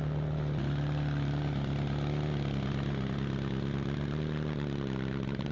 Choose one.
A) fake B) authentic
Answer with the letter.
B